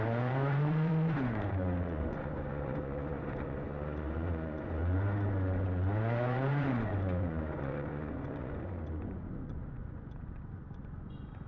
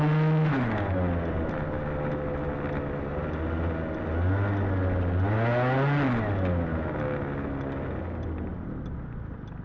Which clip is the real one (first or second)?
second